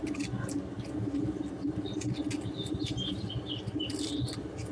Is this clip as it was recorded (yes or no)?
yes